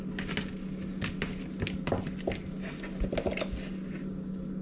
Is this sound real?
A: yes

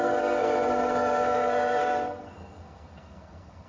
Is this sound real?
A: no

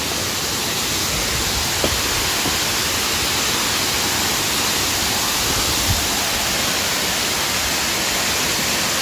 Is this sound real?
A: yes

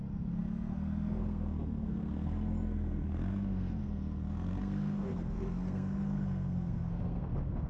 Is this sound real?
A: no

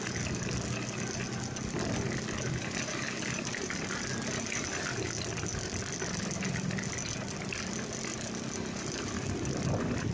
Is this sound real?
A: yes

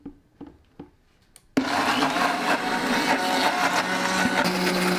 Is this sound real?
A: yes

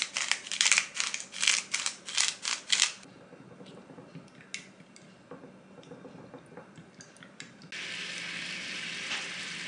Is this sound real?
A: yes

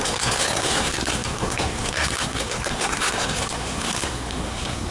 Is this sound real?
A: no